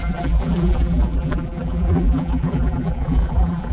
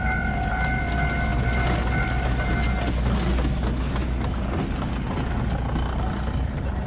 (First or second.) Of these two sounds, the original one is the second